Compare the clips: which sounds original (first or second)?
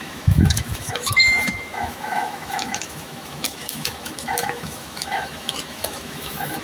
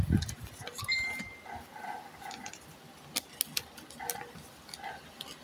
second